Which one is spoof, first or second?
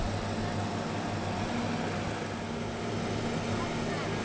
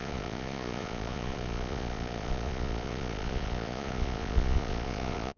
second